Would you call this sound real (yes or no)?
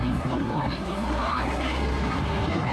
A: no